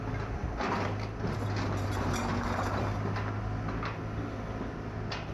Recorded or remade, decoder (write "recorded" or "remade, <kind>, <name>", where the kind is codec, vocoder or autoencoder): recorded